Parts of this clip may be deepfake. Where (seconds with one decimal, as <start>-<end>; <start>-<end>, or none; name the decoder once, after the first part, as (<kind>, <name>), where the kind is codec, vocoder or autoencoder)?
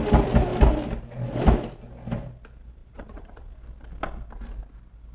2.8-3.5 (vocoder, Vocos)